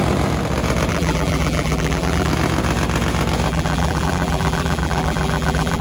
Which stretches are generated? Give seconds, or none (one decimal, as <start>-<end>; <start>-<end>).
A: 0.9-2.3; 3.5-5.8